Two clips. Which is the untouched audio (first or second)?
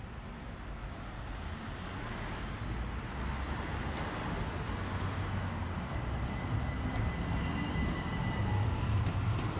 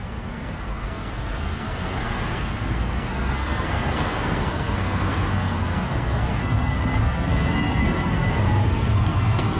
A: first